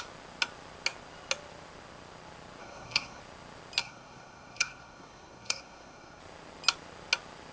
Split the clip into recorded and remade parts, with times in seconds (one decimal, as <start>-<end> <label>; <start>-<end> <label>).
0.0-2.6 recorded; 2.6-3.2 remade; 3.2-3.8 recorded; 3.8-6.2 remade; 6.2-7.5 recorded